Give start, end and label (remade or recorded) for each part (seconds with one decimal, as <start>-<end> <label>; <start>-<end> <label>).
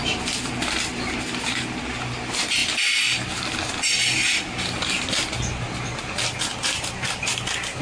0.0-6.5 recorded; 6.5-7.8 remade